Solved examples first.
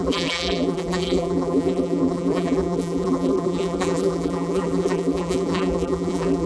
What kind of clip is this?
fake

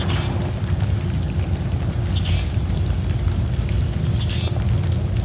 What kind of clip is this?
real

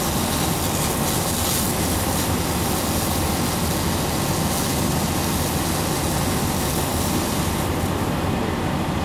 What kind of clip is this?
real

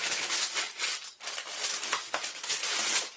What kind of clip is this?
real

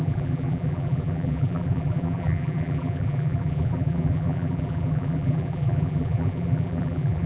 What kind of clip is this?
fake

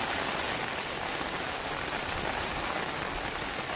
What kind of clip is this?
real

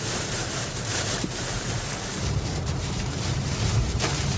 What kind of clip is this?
fake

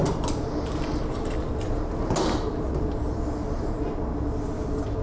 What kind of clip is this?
real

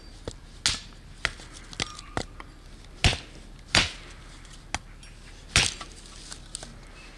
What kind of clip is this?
real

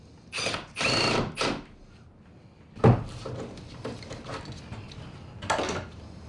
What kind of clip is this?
real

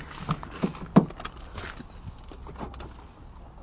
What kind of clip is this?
real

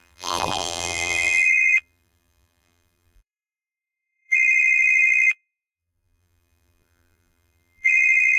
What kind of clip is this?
fake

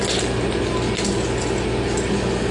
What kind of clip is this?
real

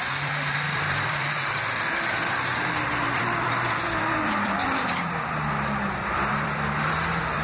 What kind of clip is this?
fake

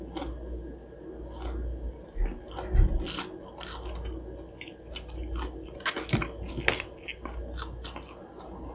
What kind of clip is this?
real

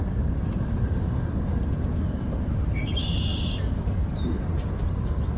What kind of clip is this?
fake